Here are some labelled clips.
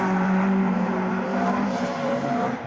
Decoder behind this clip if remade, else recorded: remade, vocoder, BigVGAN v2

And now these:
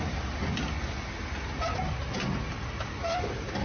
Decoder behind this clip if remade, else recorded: recorded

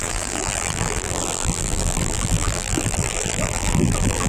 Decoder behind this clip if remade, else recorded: remade, vocoder, BigVGAN v2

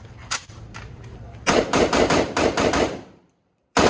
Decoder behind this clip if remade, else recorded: remade, vocoder, BigVGAN v2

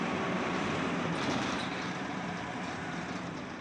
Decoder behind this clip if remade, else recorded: remade, vocoder, BigVGAN v2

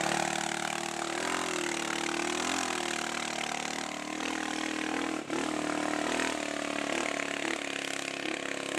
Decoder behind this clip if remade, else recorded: recorded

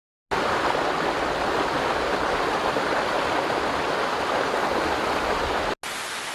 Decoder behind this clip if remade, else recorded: recorded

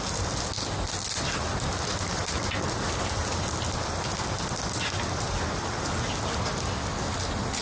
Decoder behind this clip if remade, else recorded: recorded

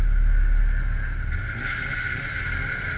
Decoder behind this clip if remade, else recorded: recorded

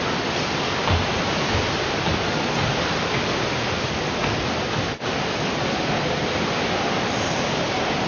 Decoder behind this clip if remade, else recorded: recorded